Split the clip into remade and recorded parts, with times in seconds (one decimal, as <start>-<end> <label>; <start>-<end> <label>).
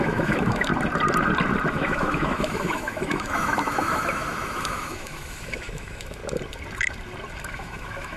0.0-0.7 remade; 0.7-1.7 recorded; 1.7-6.2 remade; 6.2-7.4 recorded; 7.4-8.2 remade